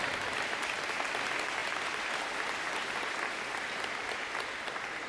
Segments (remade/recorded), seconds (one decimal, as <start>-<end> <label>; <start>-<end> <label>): 0.0-5.1 recorded